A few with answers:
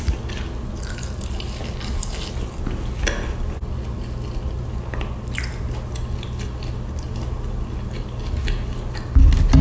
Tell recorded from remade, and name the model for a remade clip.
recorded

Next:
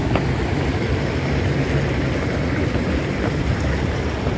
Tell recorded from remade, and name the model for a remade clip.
recorded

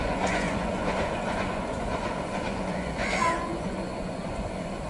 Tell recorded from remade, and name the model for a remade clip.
remade, vocoder, Vocos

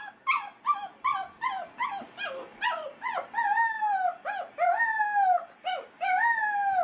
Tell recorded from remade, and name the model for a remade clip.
recorded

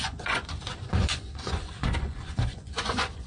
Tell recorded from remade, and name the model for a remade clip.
remade, vocoder, Vocos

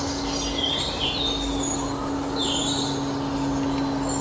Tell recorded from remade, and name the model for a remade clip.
recorded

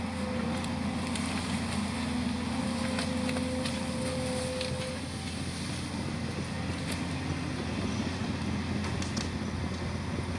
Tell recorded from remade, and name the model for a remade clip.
recorded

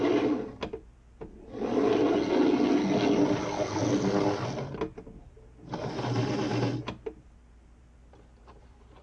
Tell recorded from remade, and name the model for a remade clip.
recorded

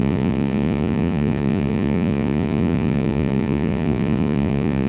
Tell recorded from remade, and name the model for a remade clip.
remade, vocoder, Vocos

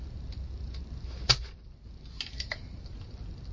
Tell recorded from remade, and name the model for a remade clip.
recorded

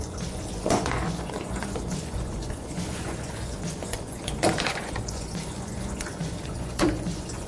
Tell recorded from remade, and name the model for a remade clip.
remade, vocoder, Vocos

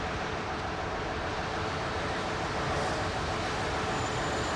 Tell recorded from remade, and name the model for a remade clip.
recorded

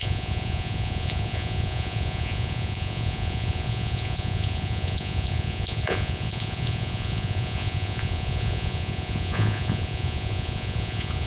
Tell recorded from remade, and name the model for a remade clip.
remade, vocoder, Vocos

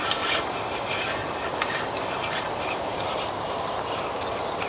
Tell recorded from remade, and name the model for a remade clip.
recorded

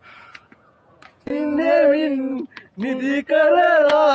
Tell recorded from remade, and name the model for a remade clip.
remade, vocoder, Vocos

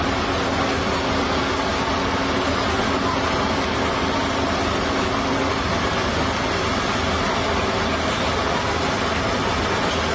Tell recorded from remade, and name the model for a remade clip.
recorded